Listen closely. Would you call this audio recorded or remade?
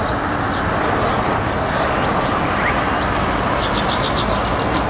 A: recorded